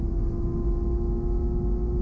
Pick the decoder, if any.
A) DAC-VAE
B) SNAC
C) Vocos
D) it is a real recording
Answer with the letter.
D